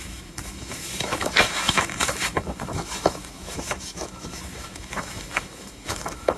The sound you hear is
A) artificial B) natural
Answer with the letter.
A